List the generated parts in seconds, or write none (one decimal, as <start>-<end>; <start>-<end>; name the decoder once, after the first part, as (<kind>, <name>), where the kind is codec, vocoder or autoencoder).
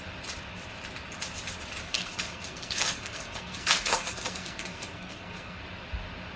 1.8-5.6 (codec, SNAC)